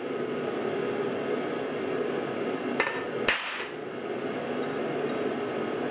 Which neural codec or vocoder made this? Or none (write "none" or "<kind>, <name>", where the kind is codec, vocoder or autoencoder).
none